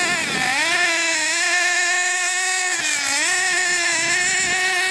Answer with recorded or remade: recorded